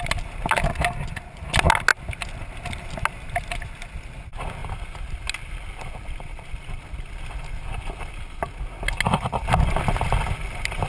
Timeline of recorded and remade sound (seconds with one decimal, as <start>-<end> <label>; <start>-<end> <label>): 0.0-10.9 recorded